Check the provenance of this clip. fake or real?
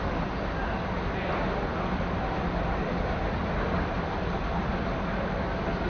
real